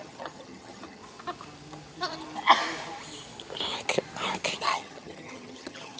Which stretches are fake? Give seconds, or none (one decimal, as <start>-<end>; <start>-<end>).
0.0-1.0; 4.6-6.0